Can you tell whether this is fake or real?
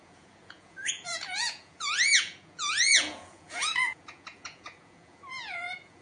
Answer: fake